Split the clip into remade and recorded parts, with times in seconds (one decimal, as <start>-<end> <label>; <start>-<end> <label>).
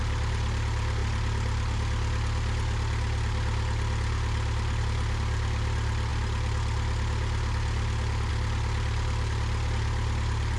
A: 0.0-10.6 recorded